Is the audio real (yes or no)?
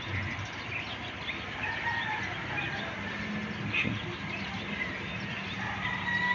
yes